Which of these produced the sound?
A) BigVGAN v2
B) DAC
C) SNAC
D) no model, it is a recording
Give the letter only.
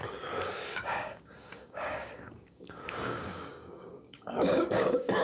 B